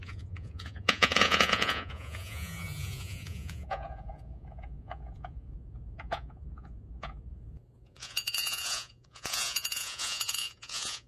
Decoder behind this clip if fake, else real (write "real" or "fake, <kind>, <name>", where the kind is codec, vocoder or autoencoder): fake, vocoder, Vocos